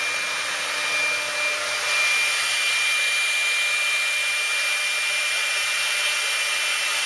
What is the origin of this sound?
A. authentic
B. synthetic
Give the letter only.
A